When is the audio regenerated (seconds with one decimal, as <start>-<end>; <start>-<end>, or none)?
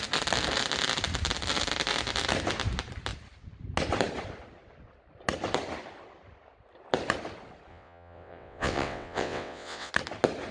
7.7-9.9